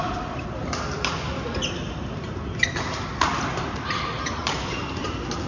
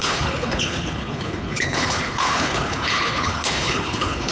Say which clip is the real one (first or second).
first